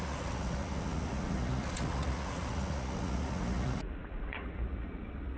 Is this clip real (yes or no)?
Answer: no